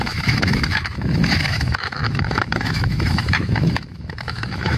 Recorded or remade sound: remade